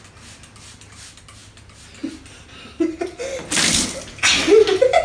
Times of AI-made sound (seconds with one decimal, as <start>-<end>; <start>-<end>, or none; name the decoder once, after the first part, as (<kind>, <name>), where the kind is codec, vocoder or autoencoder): none